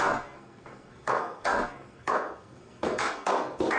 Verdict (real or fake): fake